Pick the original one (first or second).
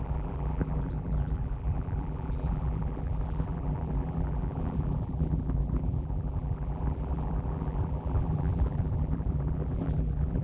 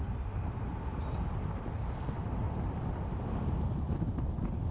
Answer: second